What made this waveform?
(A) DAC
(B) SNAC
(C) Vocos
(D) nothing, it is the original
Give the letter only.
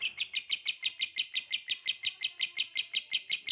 D